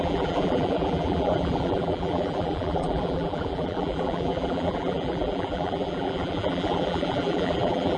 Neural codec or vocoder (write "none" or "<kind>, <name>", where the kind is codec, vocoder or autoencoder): vocoder, BigVGAN v2